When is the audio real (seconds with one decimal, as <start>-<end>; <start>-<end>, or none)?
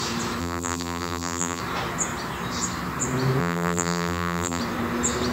0.0-0.4; 1.6-3.4; 4.6-5.3